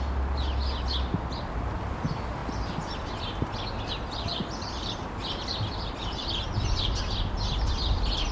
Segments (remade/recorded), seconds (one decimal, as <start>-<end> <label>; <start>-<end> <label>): 0.0-8.3 recorded